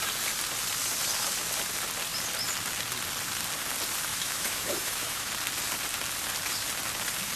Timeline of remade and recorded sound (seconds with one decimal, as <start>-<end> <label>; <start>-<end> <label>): 0.0-4.1 recorded; 4.1-5.3 remade; 5.3-7.4 recorded